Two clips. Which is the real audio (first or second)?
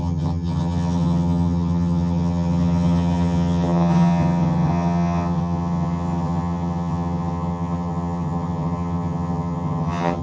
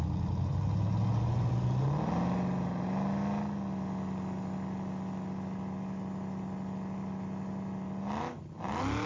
second